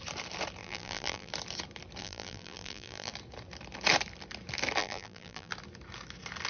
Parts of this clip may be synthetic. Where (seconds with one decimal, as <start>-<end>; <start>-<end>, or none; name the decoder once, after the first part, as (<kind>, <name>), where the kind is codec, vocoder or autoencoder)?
0.6-1.3 (vocoder, BigVGAN v2); 2.0-3.1; 4.8-5.5